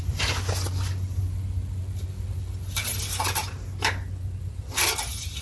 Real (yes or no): yes